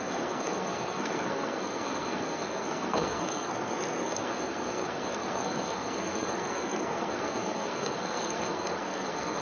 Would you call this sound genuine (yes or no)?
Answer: no